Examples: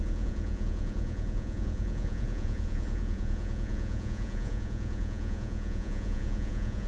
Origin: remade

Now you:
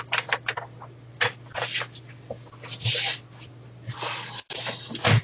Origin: recorded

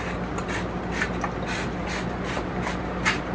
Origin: recorded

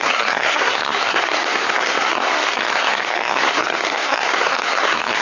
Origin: remade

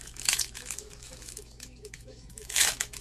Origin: remade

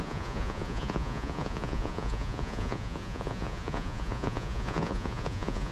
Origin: remade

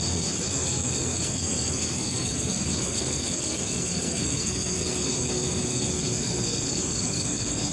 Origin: remade